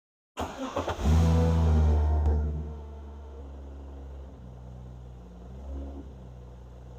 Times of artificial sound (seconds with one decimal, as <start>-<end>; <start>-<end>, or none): 0.6-3.4